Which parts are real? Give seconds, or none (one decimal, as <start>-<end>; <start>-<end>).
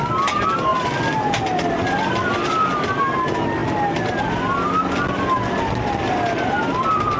0.0-7.2